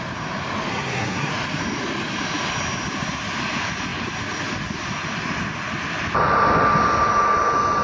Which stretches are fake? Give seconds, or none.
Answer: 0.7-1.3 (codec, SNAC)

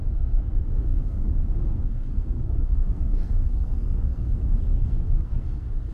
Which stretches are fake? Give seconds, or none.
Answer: 0.0-5.9 (codec, SNAC)

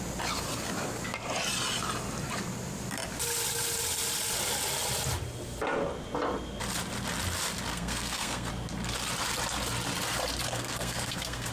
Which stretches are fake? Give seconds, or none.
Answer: 7.7-8.5 (codec, SNAC); 10.5-11.5

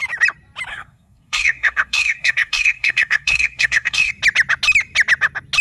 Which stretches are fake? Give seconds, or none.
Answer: 0.7-4.1 (codec, SNAC)

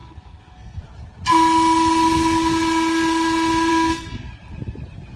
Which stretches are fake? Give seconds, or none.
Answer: 0.0-0.8 (codec, SNAC); 3.7-4.3

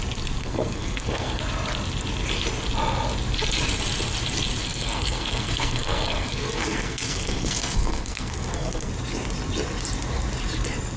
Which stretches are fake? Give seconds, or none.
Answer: 0.4-1.4 (codec, SNAC); 4.6-8.9